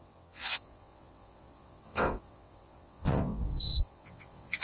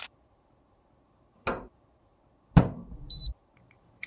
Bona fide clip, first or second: second